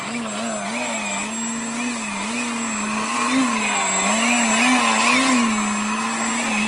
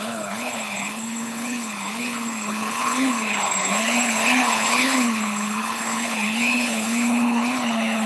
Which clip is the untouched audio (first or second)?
first